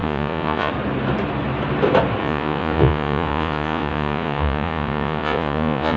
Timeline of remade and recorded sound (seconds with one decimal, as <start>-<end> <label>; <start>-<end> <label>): 0.0-0.7 remade; 0.7-2.2 recorded; 2.2-6.0 remade